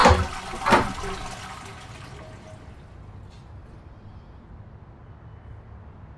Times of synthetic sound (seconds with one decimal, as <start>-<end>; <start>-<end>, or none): none